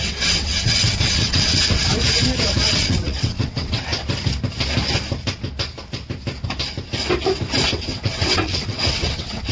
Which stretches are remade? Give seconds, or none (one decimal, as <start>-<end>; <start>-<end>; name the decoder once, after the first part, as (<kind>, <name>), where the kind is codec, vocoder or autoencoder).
0.0-1.8 (vocoder, WaveNeXt); 2.7-3.9; 7.7-9.5